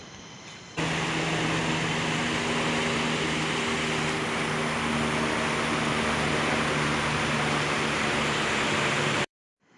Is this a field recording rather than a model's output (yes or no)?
no